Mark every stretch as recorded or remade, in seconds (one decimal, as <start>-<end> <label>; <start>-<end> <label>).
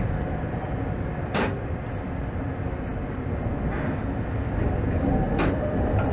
0.0-6.1 recorded